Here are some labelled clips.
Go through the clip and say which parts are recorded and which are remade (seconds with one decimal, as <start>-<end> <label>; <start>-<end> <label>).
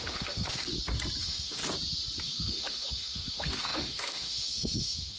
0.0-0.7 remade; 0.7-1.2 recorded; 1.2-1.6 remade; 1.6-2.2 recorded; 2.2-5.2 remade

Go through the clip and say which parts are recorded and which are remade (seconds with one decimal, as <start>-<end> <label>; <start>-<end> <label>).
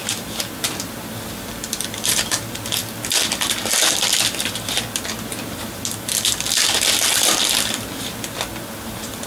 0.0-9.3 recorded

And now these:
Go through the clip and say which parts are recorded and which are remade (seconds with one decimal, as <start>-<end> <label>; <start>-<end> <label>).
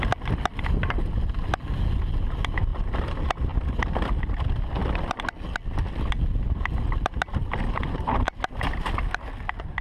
0.0-4.8 recorded; 4.8-6.1 remade; 6.1-7.3 recorded; 7.3-9.2 remade; 9.2-9.8 recorded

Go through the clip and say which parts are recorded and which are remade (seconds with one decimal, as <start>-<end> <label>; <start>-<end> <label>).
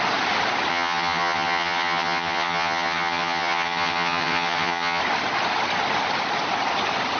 0.0-0.7 recorded; 0.7-5.0 remade; 5.0-7.2 recorded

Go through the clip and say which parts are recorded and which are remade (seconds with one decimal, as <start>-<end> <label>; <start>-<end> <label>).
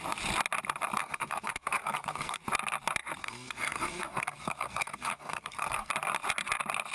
0.0-1.0 recorded; 1.0-2.4 remade; 2.4-3.2 recorded; 3.2-5.9 remade; 5.9-6.9 recorded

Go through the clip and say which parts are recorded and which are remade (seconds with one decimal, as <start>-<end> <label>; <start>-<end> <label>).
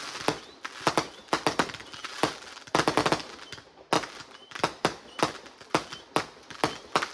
0.0-7.1 recorded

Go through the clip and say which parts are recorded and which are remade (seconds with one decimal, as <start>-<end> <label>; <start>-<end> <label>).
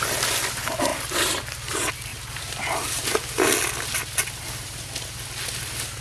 0.0-0.9 recorded; 0.9-1.4 remade; 1.4-2.1 recorded; 2.1-3.0 remade; 3.0-6.0 recorded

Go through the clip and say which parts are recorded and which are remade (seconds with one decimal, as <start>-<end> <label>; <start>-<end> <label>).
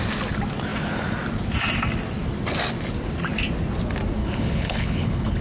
0.0-4.2 recorded; 4.2-5.4 remade